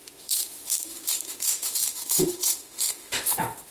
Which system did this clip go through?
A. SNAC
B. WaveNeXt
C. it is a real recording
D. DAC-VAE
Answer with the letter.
D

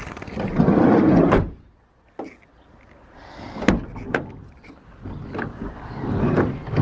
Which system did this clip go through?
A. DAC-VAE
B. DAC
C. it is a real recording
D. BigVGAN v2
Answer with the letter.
C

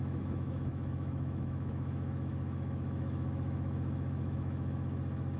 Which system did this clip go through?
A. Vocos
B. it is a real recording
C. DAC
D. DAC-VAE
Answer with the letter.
D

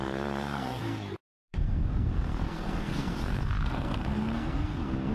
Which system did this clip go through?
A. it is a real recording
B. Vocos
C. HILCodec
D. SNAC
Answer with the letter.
D